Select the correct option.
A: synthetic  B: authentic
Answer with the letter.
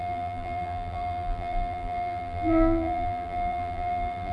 A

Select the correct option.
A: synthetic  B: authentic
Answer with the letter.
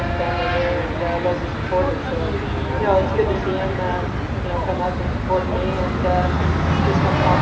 B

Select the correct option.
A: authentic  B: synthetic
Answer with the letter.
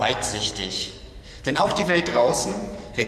B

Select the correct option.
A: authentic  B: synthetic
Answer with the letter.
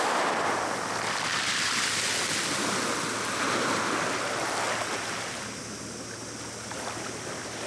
A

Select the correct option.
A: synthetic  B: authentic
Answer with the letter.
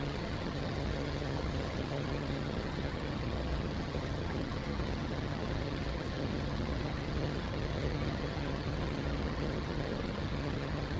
A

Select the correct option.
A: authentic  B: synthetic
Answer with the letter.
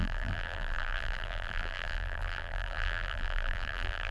B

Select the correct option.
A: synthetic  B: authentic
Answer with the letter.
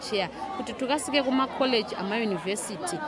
B